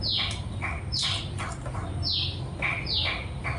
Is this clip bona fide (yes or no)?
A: yes